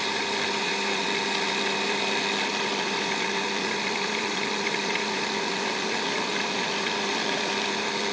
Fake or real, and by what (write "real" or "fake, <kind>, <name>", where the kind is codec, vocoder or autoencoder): fake, vocoder, BigVGAN v2